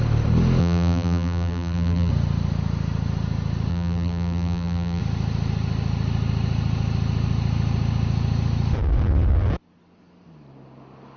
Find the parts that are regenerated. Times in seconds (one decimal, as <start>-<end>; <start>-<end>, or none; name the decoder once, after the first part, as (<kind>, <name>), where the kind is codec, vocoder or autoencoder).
0.6-2.1 (vocoder, BigVGAN v2); 3.7-5.0

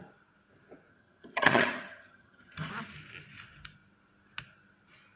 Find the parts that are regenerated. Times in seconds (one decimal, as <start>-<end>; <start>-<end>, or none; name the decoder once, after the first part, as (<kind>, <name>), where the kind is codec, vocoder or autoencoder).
0.9-2.7 (vocoder, HiFi-GAN)

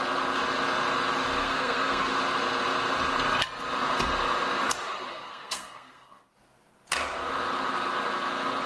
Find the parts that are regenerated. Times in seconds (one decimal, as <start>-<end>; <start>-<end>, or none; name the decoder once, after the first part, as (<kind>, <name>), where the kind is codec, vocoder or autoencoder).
1.4-2.1 (codec, SNAC); 5.1-6.2